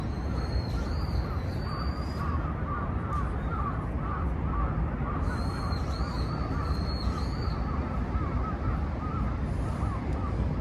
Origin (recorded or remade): recorded